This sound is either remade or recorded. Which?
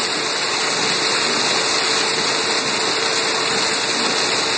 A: recorded